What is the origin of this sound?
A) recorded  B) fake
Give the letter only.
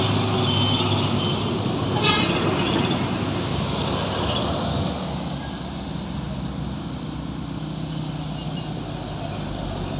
A